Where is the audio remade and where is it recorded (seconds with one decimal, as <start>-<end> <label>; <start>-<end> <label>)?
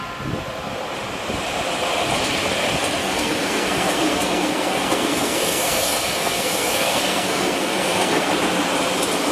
0.0-3.0 recorded; 3.0-8.3 remade; 8.3-9.3 recorded